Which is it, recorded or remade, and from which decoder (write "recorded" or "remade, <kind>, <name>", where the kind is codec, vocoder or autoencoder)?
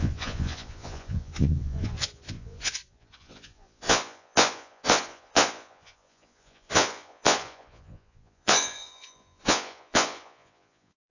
remade, vocoder, Vocos